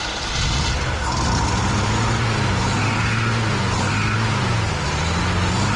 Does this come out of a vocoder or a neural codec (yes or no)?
no